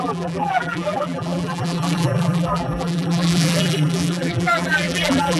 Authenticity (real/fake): fake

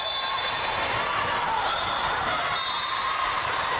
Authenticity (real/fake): fake